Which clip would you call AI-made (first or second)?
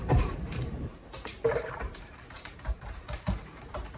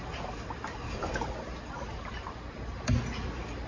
first